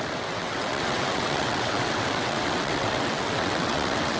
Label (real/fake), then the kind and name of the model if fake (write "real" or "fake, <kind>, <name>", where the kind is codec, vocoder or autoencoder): fake, vocoder, WaveNeXt